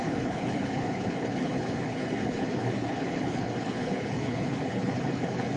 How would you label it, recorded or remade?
remade